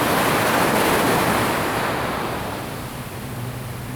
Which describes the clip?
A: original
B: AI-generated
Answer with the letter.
B